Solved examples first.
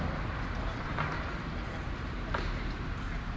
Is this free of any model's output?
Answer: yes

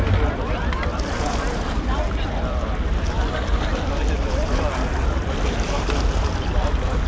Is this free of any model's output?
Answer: yes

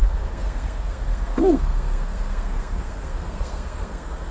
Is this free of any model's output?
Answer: no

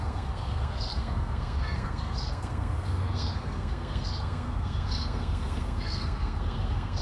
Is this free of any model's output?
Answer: no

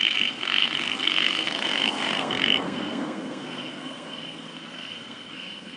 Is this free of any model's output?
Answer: no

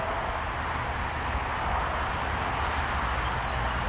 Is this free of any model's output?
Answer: yes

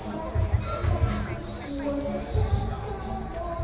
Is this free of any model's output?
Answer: yes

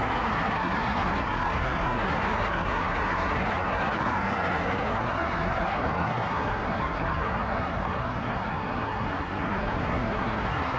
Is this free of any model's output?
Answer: no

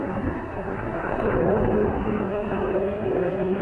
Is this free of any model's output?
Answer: no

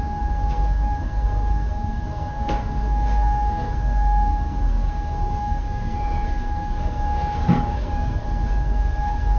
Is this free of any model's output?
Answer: no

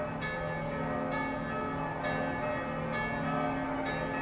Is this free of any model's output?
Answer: yes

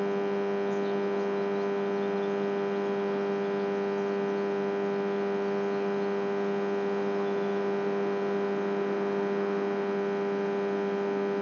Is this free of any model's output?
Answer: yes